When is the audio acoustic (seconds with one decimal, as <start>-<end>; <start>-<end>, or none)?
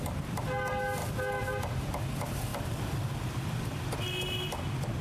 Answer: 0.0-1.0; 2.0-2.5; 3.9-5.0